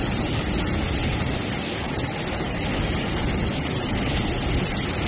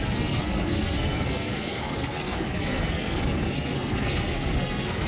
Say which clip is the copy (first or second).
second